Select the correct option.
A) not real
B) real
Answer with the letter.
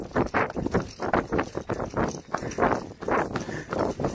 B